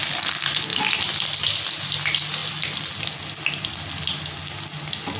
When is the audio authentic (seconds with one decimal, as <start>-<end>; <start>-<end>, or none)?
0.0-5.2